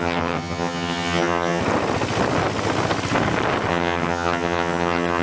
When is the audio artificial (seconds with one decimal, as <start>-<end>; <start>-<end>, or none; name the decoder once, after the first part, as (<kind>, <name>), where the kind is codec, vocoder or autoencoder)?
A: 0.0-1.6 (vocoder, HiFi-GAN); 3.7-5.2